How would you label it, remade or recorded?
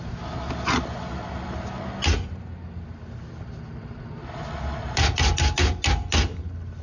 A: recorded